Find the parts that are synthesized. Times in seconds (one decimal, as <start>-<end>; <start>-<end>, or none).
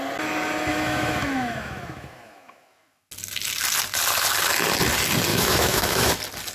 0.7-3.1; 5.3-6.1